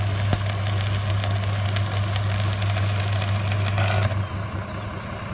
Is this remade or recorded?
recorded